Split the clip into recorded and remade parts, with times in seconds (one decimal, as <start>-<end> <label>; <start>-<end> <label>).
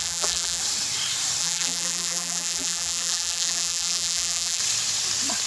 0.0-0.6 remade; 0.6-1.4 recorded; 1.4-4.6 remade; 4.6-5.5 recorded